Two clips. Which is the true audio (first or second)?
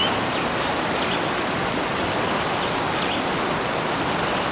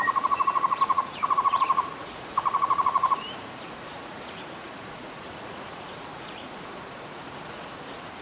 first